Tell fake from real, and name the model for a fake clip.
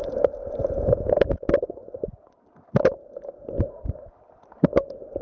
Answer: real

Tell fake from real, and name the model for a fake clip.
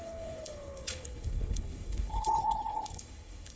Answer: fake, codec, HILCodec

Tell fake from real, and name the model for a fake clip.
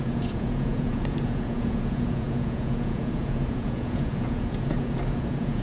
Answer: fake, vocoder, Vocos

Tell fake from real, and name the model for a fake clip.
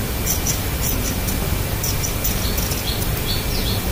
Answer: real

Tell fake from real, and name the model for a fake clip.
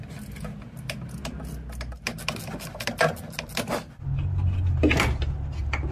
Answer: real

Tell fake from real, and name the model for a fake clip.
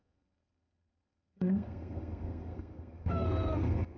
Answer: fake, codec, SNAC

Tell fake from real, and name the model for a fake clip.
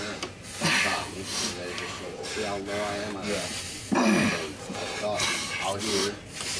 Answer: real